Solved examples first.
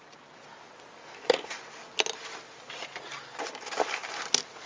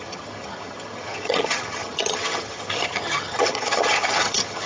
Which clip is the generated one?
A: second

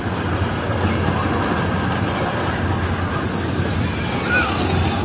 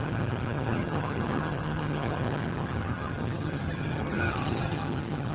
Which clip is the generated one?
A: second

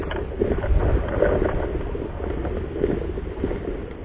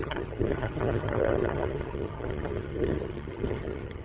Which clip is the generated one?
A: second